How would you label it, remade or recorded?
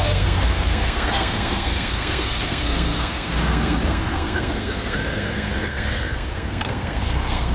remade